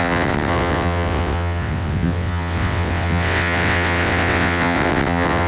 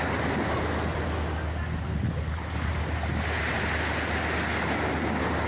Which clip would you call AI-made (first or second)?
first